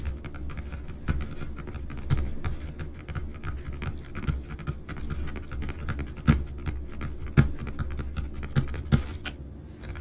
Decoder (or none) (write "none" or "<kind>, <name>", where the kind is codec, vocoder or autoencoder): none